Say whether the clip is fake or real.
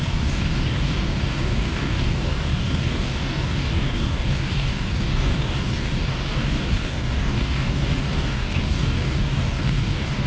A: fake